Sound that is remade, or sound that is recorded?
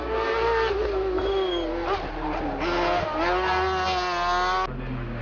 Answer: recorded